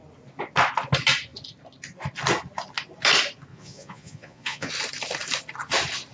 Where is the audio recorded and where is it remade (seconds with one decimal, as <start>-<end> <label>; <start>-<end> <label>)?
0.0-3.5 recorded; 3.5-4.7 remade; 4.7-6.1 recorded